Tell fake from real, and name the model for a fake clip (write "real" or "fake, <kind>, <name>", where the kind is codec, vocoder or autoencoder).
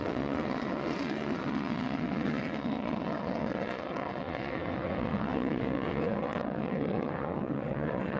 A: fake, vocoder, WaveNeXt